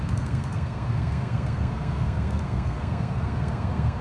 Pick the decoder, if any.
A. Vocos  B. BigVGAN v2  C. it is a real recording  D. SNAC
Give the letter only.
D